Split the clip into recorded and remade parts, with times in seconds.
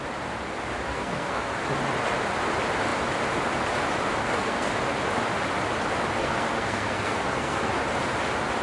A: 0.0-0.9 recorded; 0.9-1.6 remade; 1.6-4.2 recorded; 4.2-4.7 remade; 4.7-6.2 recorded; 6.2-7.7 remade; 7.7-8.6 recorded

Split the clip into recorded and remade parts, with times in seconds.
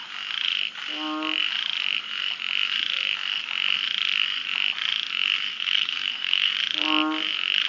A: 0.0-5.5 recorded; 5.5-6.5 remade; 6.5-7.7 recorded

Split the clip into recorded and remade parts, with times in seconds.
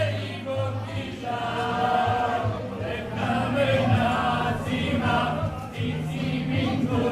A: 0.0-7.1 recorded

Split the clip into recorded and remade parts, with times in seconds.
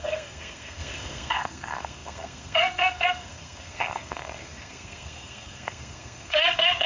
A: 0.0-6.9 remade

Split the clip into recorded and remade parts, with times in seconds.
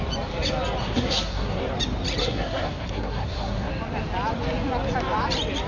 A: 0.0-0.8 recorded; 0.8-1.6 remade; 1.6-2.2 recorded; 2.2-3.7 remade; 3.7-5.7 recorded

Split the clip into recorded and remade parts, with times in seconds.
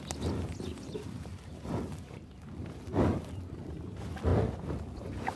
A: 0.0-5.4 recorded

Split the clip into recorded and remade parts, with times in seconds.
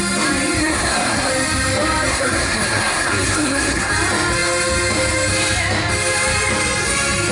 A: 0.0-0.6 recorded; 0.6-1.3 remade; 1.3-2.1 recorded; 2.1-3.9 remade; 3.9-7.3 recorded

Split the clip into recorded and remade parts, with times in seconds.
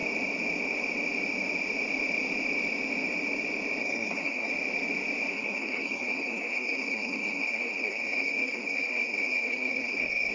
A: 0.0-3.8 recorded; 3.8-4.5 remade; 4.5-5.3 recorded; 5.3-10.3 remade